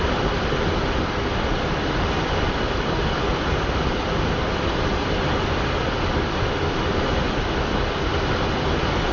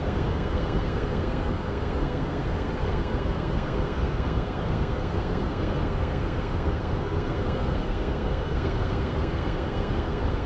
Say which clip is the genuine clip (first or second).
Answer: first